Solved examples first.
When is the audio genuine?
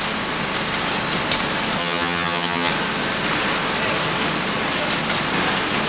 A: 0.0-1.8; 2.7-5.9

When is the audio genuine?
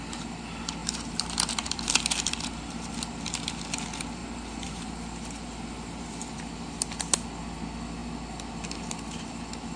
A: 0.0-0.8; 3.0-4.2; 4.9-9.8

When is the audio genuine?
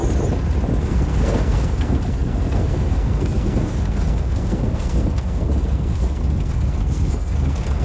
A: 0.0-0.8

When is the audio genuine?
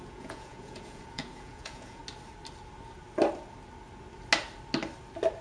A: 2.0-5.4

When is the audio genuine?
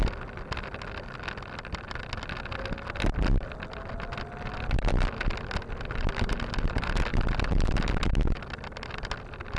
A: 0.0-9.6